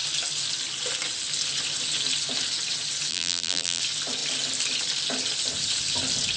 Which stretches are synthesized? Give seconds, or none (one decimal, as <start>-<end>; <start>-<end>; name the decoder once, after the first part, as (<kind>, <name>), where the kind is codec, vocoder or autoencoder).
3.1-3.8 (vocoder, BigVGAN v2)